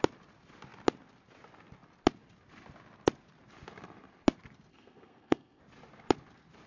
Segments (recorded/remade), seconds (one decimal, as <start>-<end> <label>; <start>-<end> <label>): 0.0-4.7 recorded; 4.7-5.6 remade; 5.6-6.7 recorded